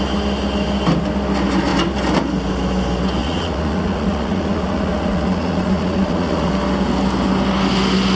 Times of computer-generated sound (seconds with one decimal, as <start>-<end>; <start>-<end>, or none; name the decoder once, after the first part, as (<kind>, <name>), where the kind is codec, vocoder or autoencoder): 3.2-6.5 (vocoder, Vocos)